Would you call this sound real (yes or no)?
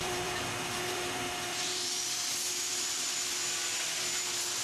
no